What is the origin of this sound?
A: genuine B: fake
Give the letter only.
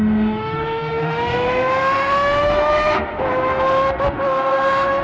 B